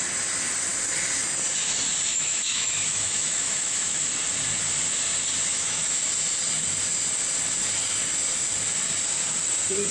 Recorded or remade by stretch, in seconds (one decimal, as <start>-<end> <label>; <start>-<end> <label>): 0.0-2.1 recorded; 2.1-4.1 remade; 4.1-5.5 recorded; 5.5-6.0 remade; 6.0-9.9 recorded

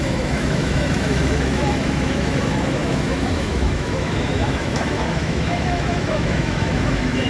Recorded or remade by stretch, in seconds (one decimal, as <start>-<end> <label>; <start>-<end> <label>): 0.0-7.3 remade